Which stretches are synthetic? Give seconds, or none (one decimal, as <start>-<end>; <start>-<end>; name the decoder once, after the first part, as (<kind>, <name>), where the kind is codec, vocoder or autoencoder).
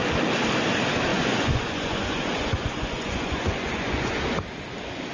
1.1-4.2 (vocoder, Vocos)